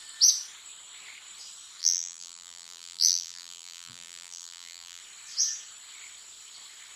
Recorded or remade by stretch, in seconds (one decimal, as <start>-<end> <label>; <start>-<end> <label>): 0.0-1.8 recorded; 1.8-5.0 remade; 5.0-7.0 recorded